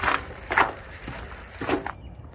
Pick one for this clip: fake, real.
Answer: real